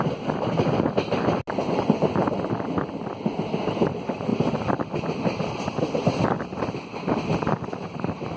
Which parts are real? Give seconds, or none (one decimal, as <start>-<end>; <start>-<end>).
0.0-8.4